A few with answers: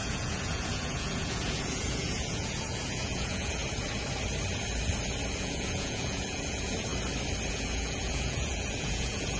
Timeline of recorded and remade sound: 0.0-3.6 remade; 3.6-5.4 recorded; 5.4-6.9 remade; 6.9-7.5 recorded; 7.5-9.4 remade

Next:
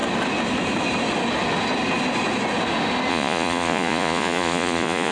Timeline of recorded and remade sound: 0.0-3.1 recorded; 3.1-5.1 remade

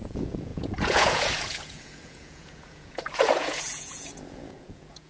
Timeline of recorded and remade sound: 0.0-5.1 remade

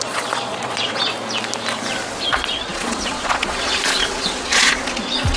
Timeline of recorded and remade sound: 0.0-1.1 remade; 1.1-2.3 recorded; 2.3-5.4 remade

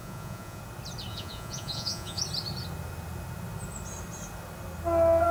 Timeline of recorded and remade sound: 0.0-0.6 remade; 0.6-1.1 recorded; 1.1-2.2 remade; 2.2-5.3 recorded